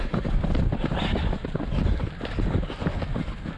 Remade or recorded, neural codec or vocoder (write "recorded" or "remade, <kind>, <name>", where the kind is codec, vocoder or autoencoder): recorded